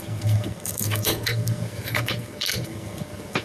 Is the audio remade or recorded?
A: remade